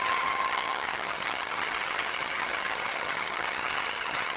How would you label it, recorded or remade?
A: remade